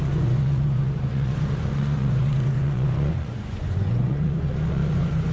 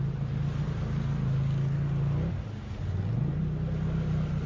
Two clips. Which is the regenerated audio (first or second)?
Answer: first